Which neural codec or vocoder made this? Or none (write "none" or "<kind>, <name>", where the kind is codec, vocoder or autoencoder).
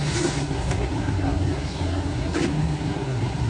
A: codec, SNAC